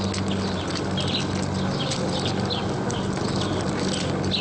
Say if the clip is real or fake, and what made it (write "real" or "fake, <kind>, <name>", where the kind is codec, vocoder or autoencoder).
real